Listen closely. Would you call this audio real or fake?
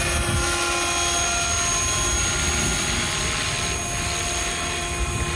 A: real